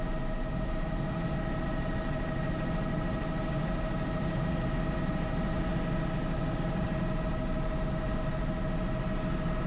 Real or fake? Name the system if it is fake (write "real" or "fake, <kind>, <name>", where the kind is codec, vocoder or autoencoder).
real